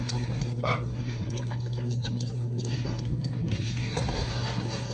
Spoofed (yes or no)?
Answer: yes